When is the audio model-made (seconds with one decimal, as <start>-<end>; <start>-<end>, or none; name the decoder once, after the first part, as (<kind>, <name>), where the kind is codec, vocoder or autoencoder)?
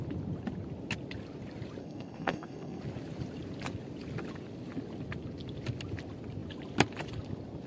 1.8-2.8 (codec, SNAC)